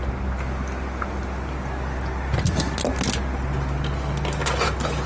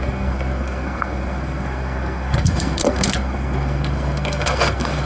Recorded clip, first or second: first